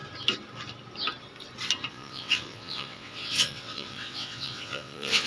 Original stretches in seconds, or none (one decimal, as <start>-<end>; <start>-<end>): 0.0-1.9